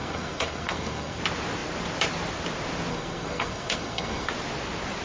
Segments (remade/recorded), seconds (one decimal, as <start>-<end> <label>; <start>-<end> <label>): 0.0-1.2 remade; 1.2-2.9 recorded; 2.9-4.3 remade; 4.3-5.0 recorded